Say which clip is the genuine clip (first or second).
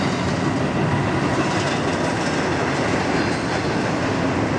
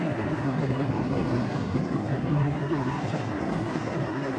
first